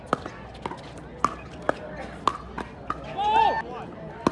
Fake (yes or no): no